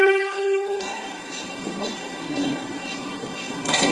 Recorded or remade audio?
remade